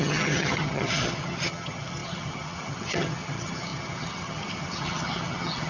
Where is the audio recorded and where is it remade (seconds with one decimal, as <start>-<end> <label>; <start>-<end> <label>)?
0.0-5.7 remade